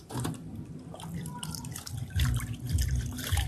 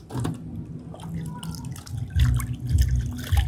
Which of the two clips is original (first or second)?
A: second